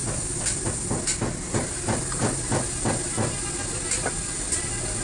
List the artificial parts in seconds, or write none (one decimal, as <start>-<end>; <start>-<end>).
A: none